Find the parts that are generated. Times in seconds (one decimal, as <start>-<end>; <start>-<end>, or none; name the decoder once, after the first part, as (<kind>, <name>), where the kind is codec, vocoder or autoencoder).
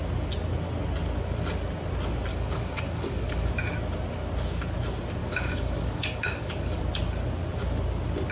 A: 2.3-3.5 (codec, DAC); 5.2-6.8